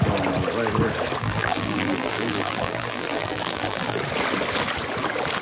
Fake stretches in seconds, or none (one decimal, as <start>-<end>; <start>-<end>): 1.2-4.0